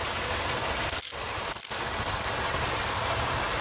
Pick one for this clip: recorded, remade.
recorded